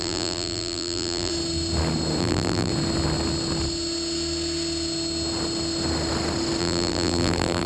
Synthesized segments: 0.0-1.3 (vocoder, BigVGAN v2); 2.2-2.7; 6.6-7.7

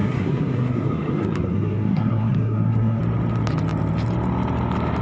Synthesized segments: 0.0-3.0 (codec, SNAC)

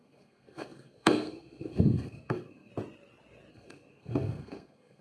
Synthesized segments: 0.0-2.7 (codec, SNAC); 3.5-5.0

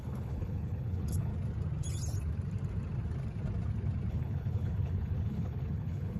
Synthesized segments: 0.0-1.3 (codec, HILCodec); 4.1-6.2

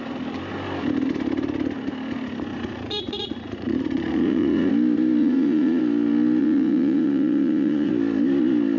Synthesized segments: 2.5-4.7 (vocoder, Vocos); 5.2-5.8; 6.4-7.9

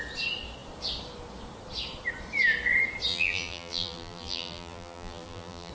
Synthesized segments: 3.1-5.7 (vocoder, BigVGAN v2)

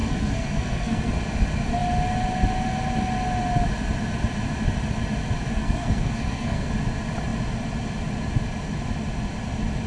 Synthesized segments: 0.0-1.1 (codec, SNAC); 5.5-6.7

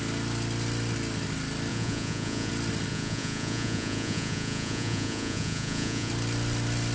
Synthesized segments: 1.7-2.5 (vocoder, Vocos); 2.9-6.1